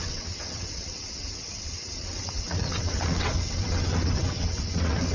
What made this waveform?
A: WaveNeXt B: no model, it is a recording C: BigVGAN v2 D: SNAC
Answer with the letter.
A